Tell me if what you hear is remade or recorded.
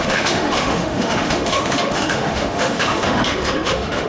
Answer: remade